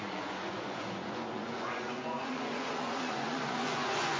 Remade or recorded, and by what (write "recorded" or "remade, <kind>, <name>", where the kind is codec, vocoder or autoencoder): remade, vocoder, Vocos